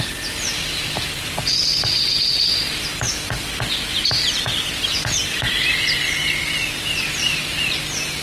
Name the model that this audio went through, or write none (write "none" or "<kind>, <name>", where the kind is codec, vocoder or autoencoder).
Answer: none